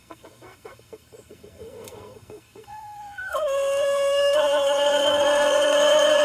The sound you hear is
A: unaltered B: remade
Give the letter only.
B